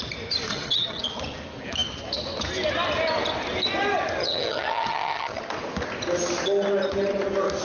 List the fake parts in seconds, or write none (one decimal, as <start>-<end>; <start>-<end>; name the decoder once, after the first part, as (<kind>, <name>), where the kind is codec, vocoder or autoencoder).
0.5-1.0 (vocoder, HiFi-GAN); 4.2-5.4

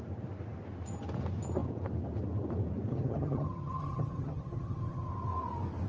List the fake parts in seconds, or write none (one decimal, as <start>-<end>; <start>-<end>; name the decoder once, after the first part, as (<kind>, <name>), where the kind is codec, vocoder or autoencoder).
2.9-5.1 (vocoder, HiFi-GAN)

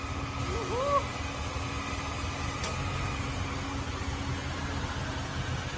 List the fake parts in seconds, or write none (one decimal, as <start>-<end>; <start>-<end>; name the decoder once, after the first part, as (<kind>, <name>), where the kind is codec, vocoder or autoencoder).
none

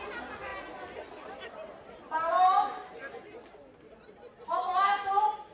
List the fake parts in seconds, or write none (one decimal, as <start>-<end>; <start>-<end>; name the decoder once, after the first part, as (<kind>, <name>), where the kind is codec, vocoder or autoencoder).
none

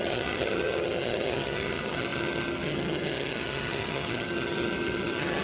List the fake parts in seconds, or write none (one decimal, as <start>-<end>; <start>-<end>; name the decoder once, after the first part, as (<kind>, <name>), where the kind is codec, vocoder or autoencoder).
0.0-5.4 (vocoder, HiFi-GAN)

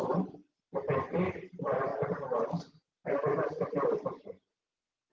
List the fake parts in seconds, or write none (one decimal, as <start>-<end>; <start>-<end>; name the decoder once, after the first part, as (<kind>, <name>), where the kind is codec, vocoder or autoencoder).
none

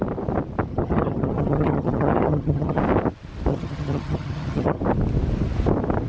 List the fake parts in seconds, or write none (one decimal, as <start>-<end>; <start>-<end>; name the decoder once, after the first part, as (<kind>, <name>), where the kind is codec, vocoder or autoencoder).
0.7-2.8 (vocoder, HiFi-GAN); 3.5-4.8

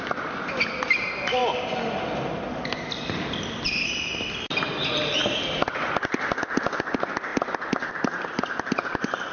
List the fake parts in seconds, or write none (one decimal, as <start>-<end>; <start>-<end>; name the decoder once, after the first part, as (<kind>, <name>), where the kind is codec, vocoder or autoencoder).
none